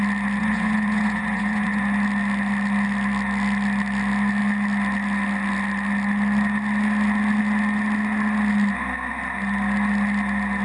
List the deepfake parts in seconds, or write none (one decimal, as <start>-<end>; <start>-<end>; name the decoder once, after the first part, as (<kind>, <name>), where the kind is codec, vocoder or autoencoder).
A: 0.4-1.8 (vocoder, Vocos)

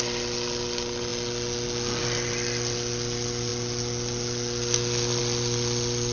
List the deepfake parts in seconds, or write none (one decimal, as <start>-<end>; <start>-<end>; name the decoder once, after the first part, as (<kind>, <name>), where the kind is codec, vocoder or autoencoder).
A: none